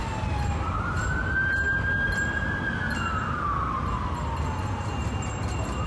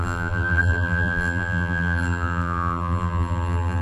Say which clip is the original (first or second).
first